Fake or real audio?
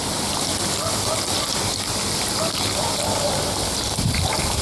real